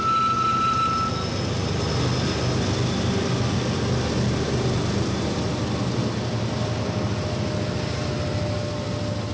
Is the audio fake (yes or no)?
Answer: no